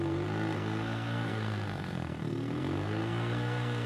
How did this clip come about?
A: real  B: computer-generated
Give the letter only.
B